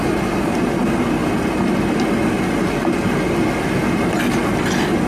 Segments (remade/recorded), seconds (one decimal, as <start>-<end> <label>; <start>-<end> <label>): 0.0-5.1 recorded

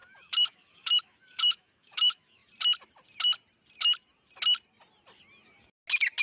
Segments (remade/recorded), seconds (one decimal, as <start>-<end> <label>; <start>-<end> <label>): 0.0-2.4 remade; 2.4-6.2 recorded

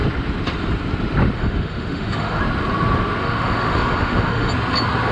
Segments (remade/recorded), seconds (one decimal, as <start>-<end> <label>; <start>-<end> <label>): 0.0-1.4 recorded; 1.4-2.4 remade; 2.4-3.2 recorded; 3.2-4.5 remade; 4.5-5.1 recorded

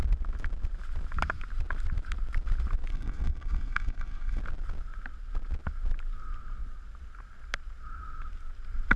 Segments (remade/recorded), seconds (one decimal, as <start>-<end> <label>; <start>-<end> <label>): 0.0-2.9 recorded; 2.9-4.4 remade; 4.4-9.0 recorded

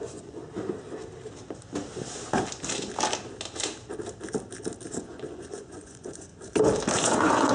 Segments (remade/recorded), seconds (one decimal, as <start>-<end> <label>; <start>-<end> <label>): 0.0-0.4 remade; 0.4-4.9 recorded; 4.9-6.3 remade; 6.3-7.0 recorded; 7.0-7.5 remade

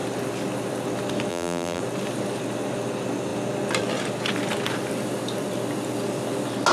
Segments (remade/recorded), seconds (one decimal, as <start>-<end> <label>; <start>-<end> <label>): 0.0-1.3 recorded; 1.3-1.8 remade; 1.8-6.7 recorded

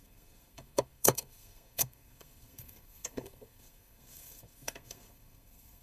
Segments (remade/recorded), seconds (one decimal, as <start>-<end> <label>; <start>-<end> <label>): 0.0-5.8 remade

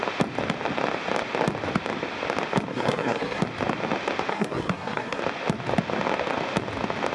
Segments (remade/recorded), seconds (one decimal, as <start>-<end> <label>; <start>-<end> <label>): 0.0-2.7 recorded; 2.7-3.4 remade; 3.4-4.3 recorded; 4.3-5.2 remade; 5.2-7.1 recorded